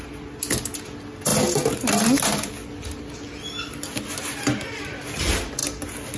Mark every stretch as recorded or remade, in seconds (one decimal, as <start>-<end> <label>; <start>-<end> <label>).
0.0-6.2 recorded